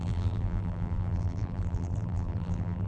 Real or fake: fake